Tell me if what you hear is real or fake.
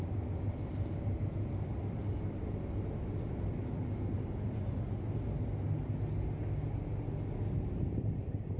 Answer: real